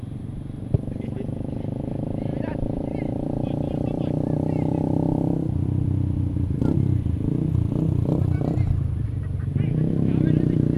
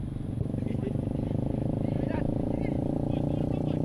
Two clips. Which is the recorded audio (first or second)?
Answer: second